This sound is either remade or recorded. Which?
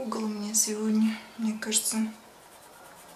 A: recorded